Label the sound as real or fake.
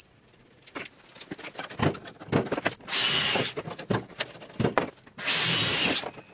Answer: real